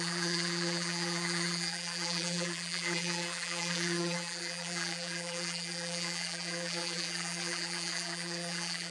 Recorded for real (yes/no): no